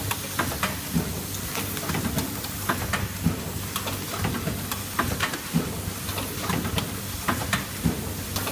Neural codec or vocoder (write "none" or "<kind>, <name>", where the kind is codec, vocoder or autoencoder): none